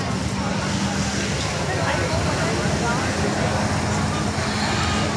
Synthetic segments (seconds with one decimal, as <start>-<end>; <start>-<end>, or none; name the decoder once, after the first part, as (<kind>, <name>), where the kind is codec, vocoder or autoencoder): none